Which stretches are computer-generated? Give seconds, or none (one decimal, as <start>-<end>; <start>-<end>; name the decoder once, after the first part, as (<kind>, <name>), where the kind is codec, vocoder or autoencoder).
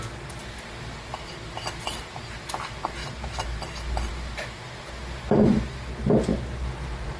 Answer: 3.0-4.1 (vocoder, BigVGAN v2)